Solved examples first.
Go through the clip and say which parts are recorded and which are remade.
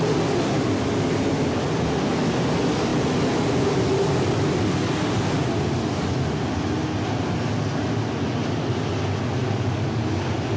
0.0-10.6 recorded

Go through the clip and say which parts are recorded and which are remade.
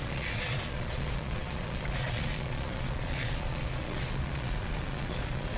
0.0-5.6 remade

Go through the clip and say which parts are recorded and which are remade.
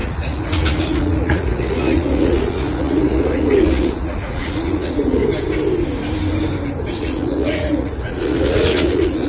0.0-5.2 remade; 5.2-7.0 recorded; 7.0-9.3 remade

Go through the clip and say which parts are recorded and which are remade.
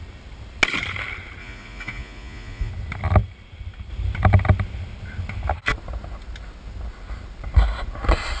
0.0-1.4 recorded; 1.4-2.7 remade; 2.7-8.4 recorded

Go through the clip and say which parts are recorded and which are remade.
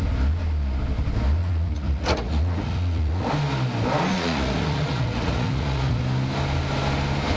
0.0-1.4 recorded; 1.4-3.3 remade; 3.3-4.1 recorded; 4.1-6.0 remade; 6.0-7.4 recorded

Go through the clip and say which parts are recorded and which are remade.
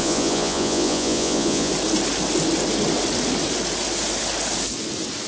0.0-1.7 remade; 1.7-5.3 recorded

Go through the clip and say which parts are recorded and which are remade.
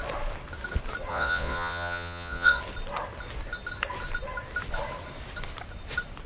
0.0-1.1 recorded; 1.1-2.6 remade; 2.6-6.3 recorded